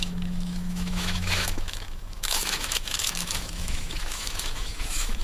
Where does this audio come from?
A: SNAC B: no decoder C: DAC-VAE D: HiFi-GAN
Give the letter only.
C